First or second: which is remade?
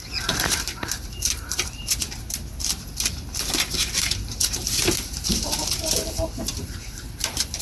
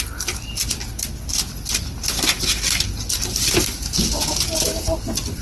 first